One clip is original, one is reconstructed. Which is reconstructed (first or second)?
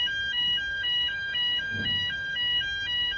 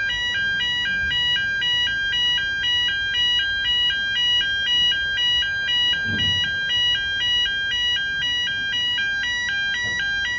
first